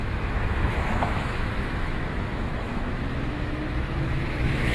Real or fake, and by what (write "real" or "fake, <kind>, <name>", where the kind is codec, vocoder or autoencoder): fake, autoencoder, DAC-VAE